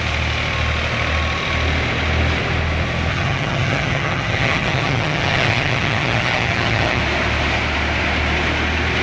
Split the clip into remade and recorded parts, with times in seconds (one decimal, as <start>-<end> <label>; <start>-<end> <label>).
0.0-3.1 recorded; 3.1-7.0 remade; 7.0-9.0 recorded

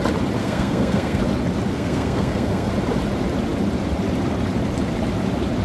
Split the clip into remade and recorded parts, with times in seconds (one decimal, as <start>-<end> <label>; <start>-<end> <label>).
0.0-0.4 recorded; 0.4-1.2 remade; 1.2-1.7 recorded; 1.7-2.7 remade; 2.7-5.6 recorded

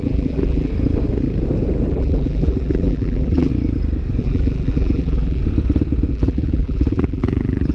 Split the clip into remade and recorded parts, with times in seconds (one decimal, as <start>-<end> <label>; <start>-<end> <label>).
0.0-0.7 remade; 0.7-1.9 recorded; 1.9-3.5 remade; 3.5-4.2 recorded; 4.2-5.4 remade; 5.4-6.1 recorded; 6.1-7.7 remade

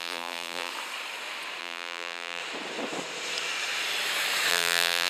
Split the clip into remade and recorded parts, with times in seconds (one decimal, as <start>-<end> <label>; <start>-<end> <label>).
0.0-0.7 remade; 0.7-1.6 recorded; 1.6-2.4 remade; 2.4-4.5 recorded; 4.5-5.1 remade

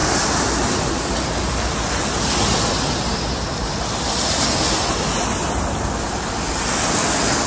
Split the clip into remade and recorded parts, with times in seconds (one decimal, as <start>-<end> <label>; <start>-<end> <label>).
0.0-7.5 recorded